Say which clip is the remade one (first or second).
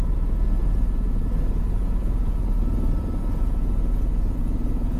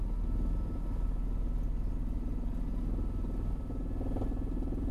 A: first